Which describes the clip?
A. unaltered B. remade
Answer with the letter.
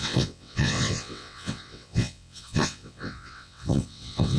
B